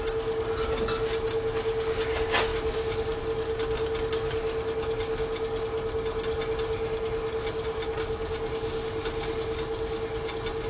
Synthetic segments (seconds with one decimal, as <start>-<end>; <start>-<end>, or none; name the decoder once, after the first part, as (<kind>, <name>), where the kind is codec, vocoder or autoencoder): 2.5-3.2 (vocoder, BigVGAN v2)